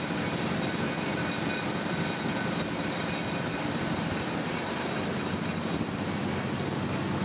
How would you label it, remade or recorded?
recorded